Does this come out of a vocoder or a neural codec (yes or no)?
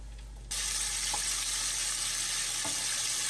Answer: no